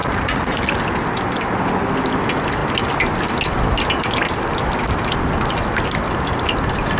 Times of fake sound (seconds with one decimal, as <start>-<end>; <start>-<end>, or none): 0.0-0.6